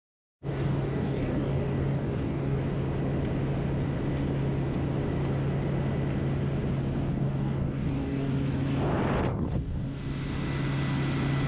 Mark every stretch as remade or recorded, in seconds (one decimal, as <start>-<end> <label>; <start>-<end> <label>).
0.0-0.5 recorded; 0.5-2.6 remade; 2.6-7.1 recorded; 7.1-8.3 remade; 8.3-9.3 recorded; 9.3-10.0 remade; 10.0-11.5 recorded